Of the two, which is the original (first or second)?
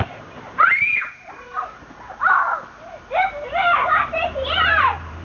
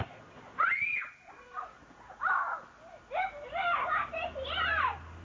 second